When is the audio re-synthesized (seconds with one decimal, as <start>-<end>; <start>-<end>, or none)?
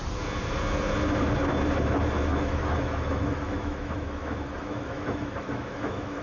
2.3-6.2